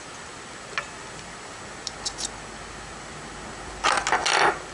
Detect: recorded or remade recorded